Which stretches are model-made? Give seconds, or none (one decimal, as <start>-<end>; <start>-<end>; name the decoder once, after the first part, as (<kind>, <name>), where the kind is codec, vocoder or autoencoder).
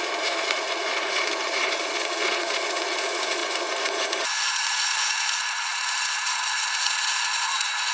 0.0-7.9 (vocoder, Vocos)